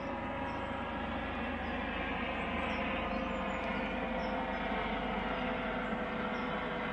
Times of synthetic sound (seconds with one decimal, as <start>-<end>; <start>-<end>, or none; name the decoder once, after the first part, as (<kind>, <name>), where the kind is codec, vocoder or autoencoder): none